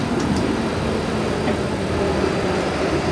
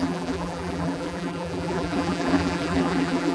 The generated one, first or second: second